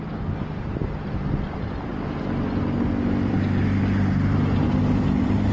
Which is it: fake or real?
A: real